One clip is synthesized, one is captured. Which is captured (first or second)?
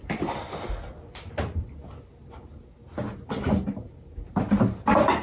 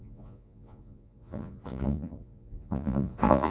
first